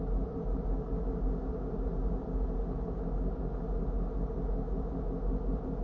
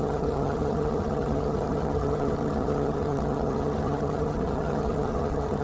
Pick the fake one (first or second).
second